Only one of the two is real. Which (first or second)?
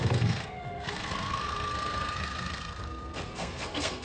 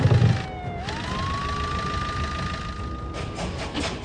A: second